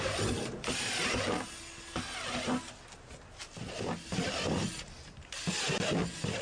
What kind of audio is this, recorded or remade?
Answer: recorded